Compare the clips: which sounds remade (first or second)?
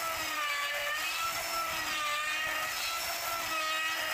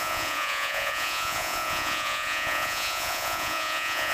second